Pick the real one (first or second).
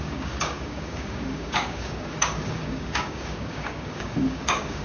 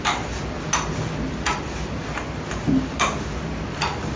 second